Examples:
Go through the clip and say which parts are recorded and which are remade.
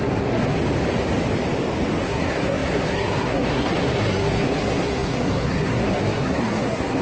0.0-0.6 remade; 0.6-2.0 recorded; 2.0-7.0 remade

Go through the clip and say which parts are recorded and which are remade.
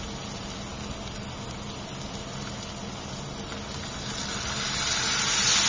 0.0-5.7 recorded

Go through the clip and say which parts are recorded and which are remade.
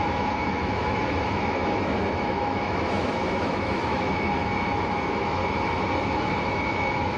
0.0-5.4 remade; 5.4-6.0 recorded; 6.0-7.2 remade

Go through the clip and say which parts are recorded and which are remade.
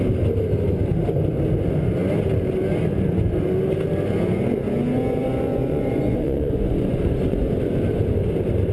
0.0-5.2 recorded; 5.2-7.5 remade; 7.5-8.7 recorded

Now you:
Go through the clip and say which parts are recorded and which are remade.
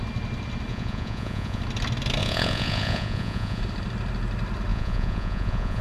0.0-0.7 recorded; 0.7-1.6 remade; 1.6-2.2 recorded; 2.2-3.6 remade; 3.6-4.7 recorded; 4.7-5.8 remade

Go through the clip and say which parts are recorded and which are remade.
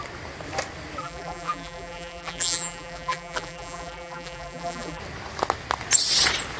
0.0-1.0 recorded; 1.0-5.0 remade; 5.0-6.6 recorded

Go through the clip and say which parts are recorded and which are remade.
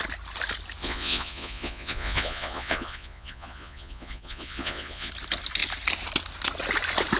0.0-0.8 recorded; 0.8-5.1 remade; 5.1-7.2 recorded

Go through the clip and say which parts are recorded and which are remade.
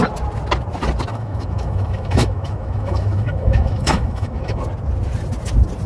0.0-1.1 recorded; 1.1-4.6 remade; 4.6-5.9 recorded